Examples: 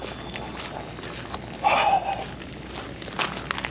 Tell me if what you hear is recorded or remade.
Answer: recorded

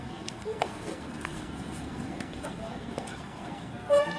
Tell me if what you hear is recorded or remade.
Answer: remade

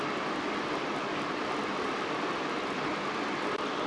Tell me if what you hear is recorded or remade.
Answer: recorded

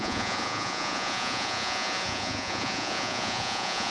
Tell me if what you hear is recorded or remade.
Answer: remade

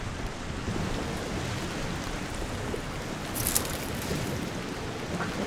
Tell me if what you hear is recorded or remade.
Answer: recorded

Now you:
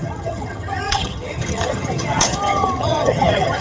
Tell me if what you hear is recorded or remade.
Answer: remade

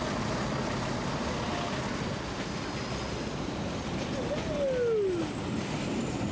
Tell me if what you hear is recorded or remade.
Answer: recorded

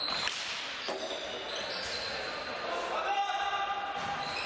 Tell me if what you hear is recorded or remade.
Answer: recorded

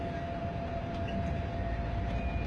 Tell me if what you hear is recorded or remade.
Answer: recorded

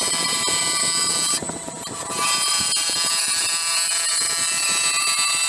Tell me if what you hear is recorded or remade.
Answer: remade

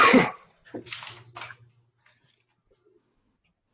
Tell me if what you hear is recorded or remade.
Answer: recorded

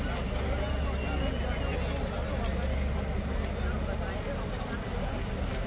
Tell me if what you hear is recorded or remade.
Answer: recorded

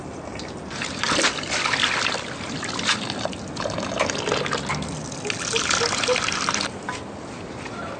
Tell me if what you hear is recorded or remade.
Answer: recorded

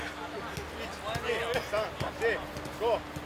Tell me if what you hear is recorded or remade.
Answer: recorded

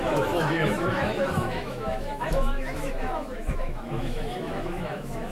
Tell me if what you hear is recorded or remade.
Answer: remade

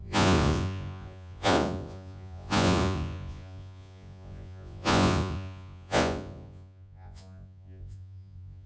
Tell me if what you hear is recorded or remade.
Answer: remade